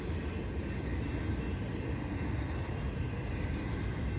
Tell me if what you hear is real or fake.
real